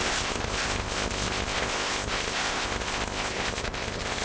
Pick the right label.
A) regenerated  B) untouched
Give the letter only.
A